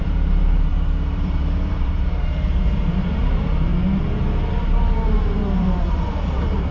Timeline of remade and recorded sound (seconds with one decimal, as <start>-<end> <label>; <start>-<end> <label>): 0.0-3.7 remade; 3.7-4.5 recorded; 4.5-6.7 remade